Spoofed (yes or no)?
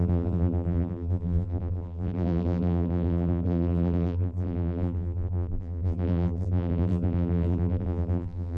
yes